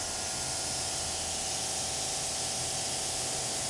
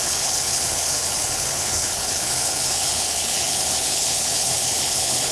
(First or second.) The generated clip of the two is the second